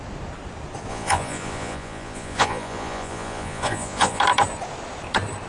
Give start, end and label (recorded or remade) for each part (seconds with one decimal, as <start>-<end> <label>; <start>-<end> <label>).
0.0-0.9 recorded; 0.9-4.2 remade; 4.2-5.5 recorded